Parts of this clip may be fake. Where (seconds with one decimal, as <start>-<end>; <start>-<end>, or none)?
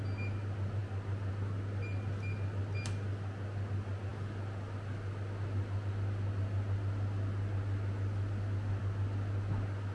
none